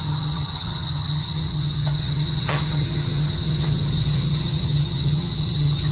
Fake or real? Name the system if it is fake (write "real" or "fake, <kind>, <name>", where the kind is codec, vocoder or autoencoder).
fake, vocoder, HiFi-GAN